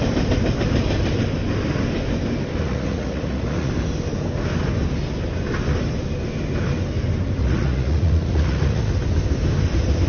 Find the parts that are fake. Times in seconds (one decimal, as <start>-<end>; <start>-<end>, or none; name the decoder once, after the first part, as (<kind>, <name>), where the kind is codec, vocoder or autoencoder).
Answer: 2.6-3.7 (vocoder, Vocos); 7.4-8.9